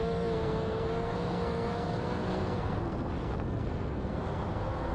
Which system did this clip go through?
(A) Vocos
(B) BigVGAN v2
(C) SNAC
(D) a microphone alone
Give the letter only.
C